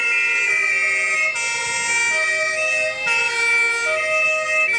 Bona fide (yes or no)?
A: yes